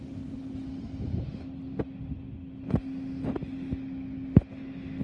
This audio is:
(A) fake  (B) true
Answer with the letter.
B